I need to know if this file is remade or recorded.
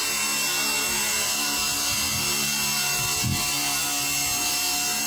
recorded